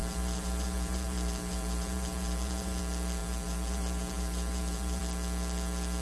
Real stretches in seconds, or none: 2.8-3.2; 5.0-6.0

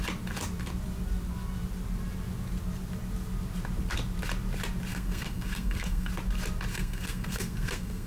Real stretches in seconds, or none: 0.0-4.9; 6.1-6.7

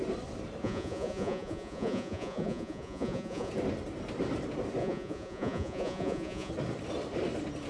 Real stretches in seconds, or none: 0.0-0.6; 3.5-4.8; 6.5-7.7

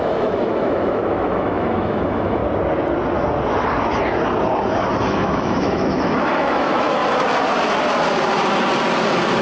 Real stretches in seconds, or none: 2.4-5.0; 7.0-9.4